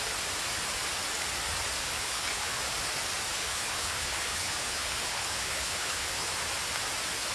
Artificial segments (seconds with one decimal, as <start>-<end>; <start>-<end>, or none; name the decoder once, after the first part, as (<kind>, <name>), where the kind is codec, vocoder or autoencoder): 1.8-2.6 (codec, HILCodec); 3.3-6.3